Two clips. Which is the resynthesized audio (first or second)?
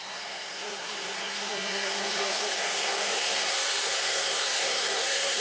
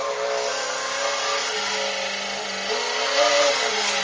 first